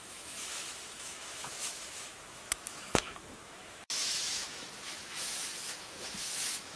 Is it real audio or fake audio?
fake